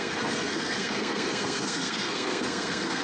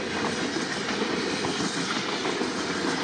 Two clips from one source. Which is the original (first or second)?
second